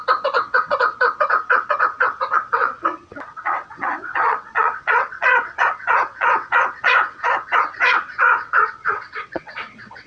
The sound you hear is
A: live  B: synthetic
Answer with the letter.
B